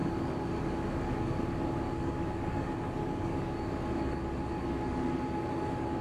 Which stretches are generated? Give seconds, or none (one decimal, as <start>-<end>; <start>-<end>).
0.0-6.0